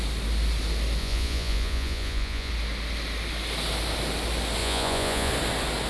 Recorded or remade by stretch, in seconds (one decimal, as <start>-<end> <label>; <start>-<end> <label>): 0.0-1.0 recorded; 1.0-2.5 remade; 2.5-4.6 recorded; 4.6-5.3 remade; 5.3-5.9 recorded